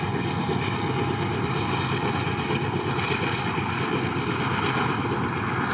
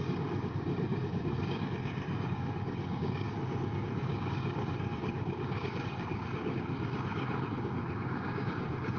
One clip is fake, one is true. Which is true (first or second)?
first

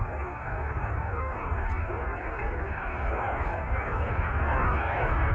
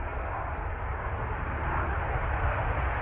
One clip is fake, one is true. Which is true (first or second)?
second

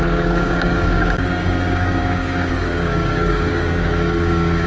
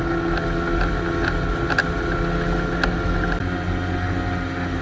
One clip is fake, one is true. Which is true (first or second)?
second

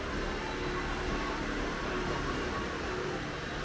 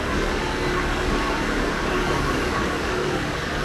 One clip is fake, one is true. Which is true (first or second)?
first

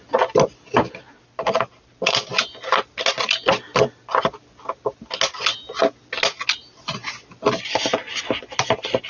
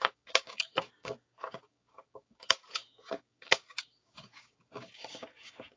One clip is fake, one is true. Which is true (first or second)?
first